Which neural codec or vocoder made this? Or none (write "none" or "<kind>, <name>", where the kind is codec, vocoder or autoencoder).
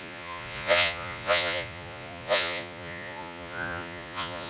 vocoder, Vocos